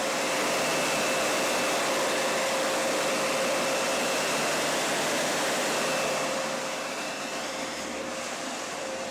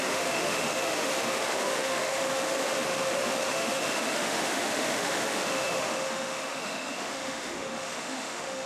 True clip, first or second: first